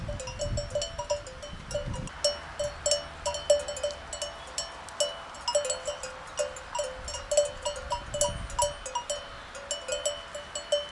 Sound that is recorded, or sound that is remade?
recorded